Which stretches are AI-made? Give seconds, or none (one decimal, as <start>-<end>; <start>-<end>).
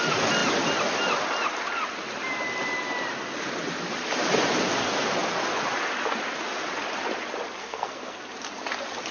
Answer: 7.6-8.2